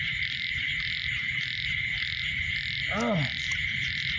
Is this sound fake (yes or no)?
no